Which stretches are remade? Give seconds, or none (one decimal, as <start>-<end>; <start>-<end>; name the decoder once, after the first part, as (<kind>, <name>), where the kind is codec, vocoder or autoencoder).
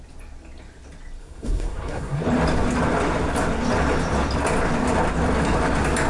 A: 1.2-2.2 (codec, SNAC)